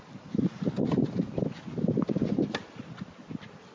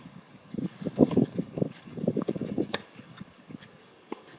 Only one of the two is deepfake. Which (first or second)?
second